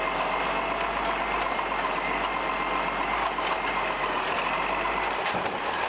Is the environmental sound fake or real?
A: real